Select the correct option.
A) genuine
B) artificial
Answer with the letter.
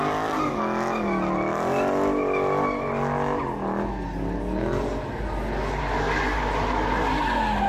A